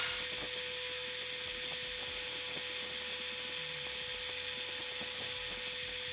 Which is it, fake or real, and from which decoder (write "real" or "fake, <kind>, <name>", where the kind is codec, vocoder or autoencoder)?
real